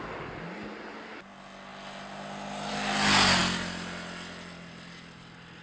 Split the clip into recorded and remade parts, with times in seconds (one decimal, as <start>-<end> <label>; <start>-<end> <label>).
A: 0.0-5.6 recorded